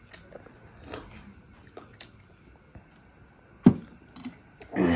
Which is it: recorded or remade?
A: recorded